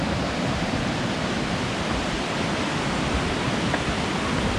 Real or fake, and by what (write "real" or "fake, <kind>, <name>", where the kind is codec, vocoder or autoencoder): real